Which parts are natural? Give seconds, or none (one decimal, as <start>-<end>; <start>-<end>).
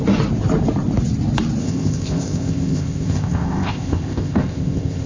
0.0-1.6